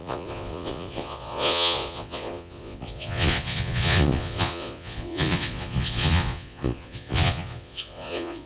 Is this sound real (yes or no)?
no